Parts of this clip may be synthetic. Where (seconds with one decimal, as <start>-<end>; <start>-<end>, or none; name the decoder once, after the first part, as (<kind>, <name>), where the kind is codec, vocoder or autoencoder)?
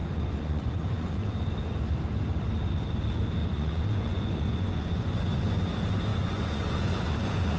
0.0-1.3 (vocoder, Vocos); 3.4-5.6; 6.1-7.6